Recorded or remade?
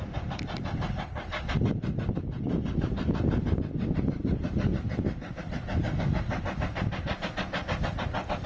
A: recorded